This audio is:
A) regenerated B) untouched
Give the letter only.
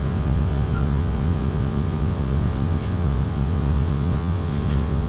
A